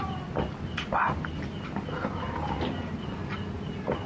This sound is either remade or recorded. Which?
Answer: recorded